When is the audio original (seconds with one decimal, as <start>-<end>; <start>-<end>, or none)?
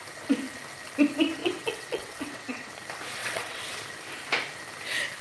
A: 0.0-1.4; 2.7-3.2; 3.7-5.2